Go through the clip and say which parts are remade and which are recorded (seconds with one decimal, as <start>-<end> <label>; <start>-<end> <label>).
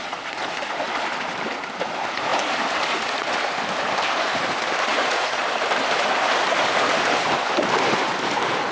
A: 0.0-0.6 remade; 0.6-4.9 recorded; 4.9-5.4 remade; 5.4-8.7 recorded